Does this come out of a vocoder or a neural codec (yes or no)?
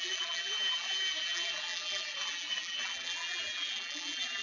yes